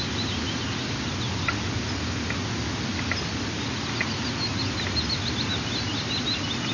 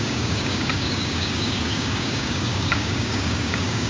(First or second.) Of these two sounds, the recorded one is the first